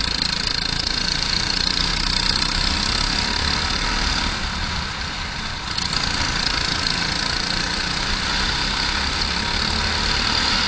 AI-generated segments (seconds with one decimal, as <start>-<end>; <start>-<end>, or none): none